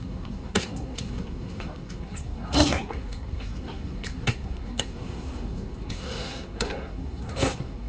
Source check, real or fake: fake